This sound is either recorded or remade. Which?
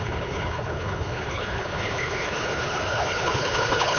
remade